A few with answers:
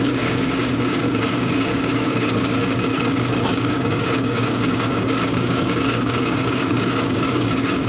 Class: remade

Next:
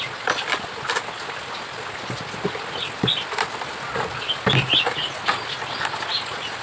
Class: recorded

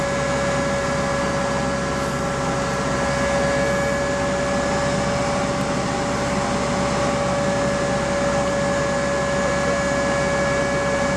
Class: recorded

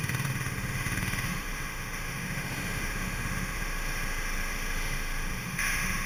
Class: remade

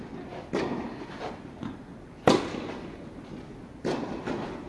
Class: recorded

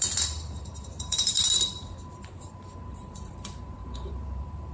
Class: remade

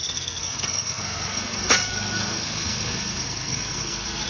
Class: remade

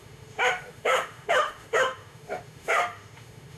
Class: remade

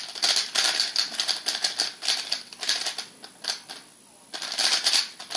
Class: recorded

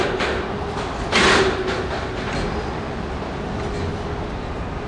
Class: recorded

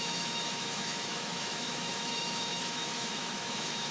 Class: remade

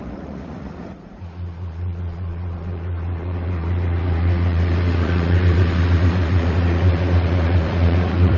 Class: remade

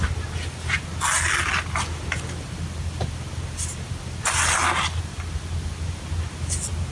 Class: recorded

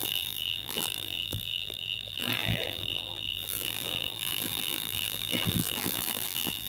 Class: remade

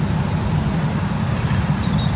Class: recorded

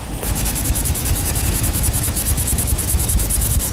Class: remade